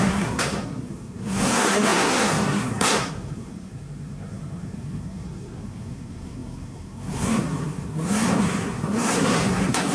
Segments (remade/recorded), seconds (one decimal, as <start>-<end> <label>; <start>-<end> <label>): 0.0-9.9 remade